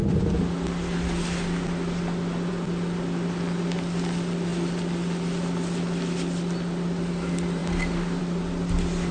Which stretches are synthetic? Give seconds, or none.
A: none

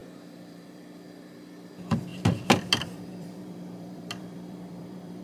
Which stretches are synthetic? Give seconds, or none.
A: 0.0-0.8; 2.1-5.2

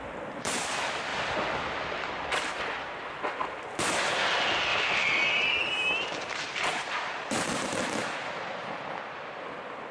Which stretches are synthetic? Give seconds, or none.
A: 1.1-2.6; 4.7-7.5